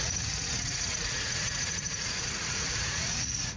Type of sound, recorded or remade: remade